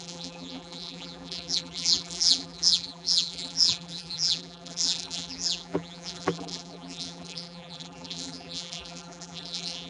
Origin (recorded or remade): remade